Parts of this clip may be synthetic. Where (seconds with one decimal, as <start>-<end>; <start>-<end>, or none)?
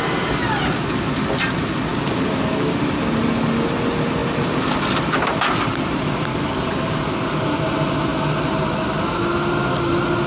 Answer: 1.9-2.8; 6.3-7.4